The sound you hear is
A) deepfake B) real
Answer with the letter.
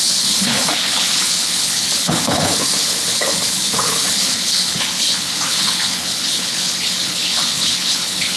A